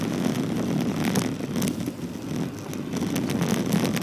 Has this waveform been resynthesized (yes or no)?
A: no